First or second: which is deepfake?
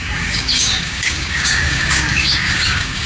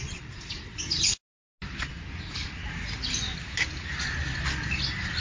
first